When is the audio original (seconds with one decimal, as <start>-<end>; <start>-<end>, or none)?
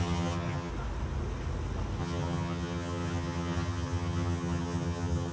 0.7-2.0